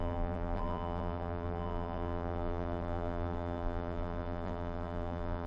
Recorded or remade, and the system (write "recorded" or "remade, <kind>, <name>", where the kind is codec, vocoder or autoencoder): remade, vocoder, BigVGAN v2